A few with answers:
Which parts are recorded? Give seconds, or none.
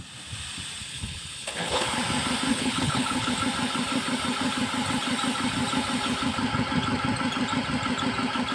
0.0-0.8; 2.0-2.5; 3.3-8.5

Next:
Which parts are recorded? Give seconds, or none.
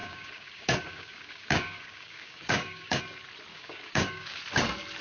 3.0-3.5; 4.4-5.0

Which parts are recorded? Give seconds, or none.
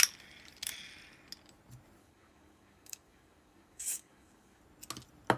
0.0-2.0; 4.6-5.4